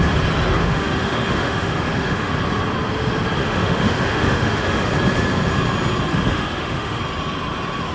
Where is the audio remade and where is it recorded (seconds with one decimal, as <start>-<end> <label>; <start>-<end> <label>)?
0.0-0.6 recorded; 0.6-2.3 remade; 2.3-3.4 recorded; 3.4-4.9 remade; 4.9-6.1 recorded; 6.1-7.0 remade; 7.0-7.9 recorded